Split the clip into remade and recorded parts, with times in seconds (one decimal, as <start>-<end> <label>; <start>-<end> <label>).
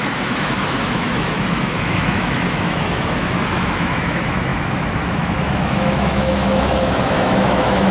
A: 0.0-7.9 remade